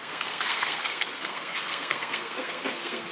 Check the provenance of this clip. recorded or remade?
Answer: remade